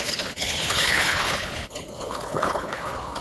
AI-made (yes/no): yes